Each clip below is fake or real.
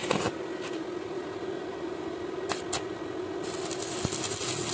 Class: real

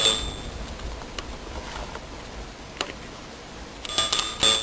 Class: real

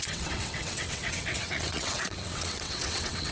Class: fake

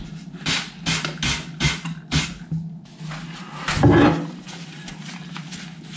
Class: real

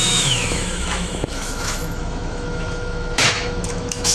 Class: fake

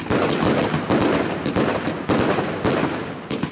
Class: real